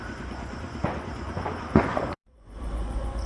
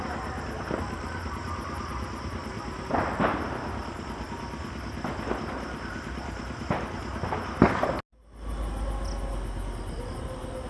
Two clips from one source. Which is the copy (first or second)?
first